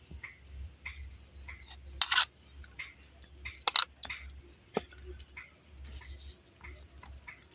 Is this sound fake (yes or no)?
no